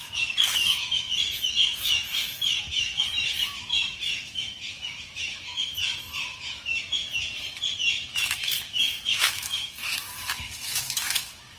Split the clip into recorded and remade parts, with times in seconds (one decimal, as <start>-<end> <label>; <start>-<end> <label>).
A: 0.0-7.0 remade; 7.0-8.1 recorded; 8.1-11.6 remade